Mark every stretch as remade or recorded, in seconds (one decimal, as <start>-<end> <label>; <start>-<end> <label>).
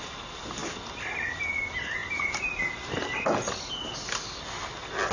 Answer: 0.0-5.1 recorded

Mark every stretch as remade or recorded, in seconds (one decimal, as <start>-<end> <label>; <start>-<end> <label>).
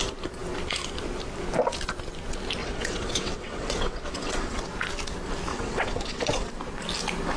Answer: 0.0-2.6 recorded; 2.6-4.7 remade; 4.7-5.5 recorded; 5.5-6.5 remade; 6.5-7.4 recorded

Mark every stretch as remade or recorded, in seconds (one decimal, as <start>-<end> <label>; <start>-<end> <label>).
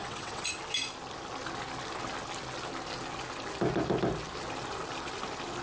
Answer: 0.0-0.6 remade; 0.6-5.6 recorded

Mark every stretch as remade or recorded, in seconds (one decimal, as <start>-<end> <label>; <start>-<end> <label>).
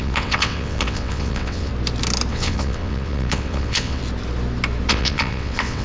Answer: 0.0-1.7 remade; 1.7-2.3 recorded; 2.3-4.0 remade; 4.0-4.9 recorded; 4.9-5.8 remade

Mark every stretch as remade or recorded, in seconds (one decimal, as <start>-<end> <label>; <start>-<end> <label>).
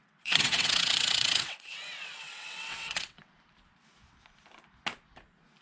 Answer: 0.0-3.4 remade; 3.4-5.6 recorded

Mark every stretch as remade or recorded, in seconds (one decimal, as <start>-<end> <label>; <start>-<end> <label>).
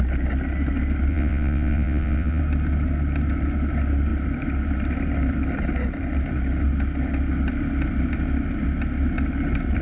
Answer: 0.0-1.1 recorded; 1.1-2.4 remade; 2.4-9.8 recorded